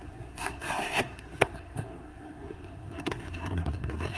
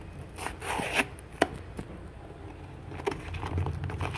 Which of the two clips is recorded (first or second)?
second